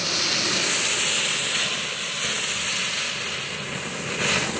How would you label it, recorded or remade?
recorded